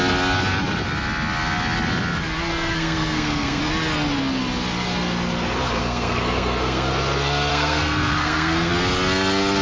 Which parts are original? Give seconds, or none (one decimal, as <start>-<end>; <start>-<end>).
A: 0.0-2.5; 3.6-5.8; 6.9-7.5; 8.7-9.6